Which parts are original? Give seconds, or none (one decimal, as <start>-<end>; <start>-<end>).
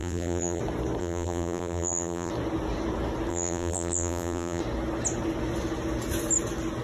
0.6-1.0; 2.3-3.3; 4.6-6.8